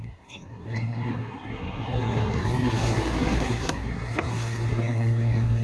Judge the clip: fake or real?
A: fake